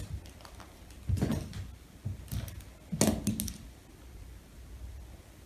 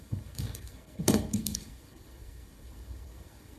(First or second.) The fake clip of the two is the second